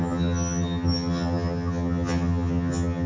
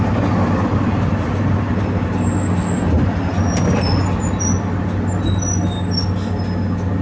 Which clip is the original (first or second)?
second